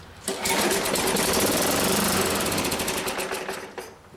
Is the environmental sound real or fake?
fake